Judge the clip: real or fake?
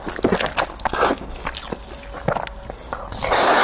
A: real